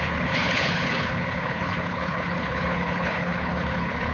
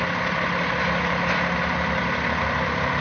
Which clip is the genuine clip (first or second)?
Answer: second